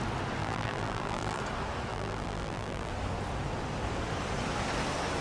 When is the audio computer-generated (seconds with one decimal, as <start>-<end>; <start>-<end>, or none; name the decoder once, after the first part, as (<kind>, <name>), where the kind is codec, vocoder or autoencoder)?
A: 0.4-1.4 (vocoder, BigVGAN v2); 1.9-2.9